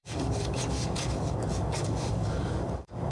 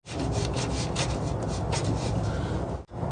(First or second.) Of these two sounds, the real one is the second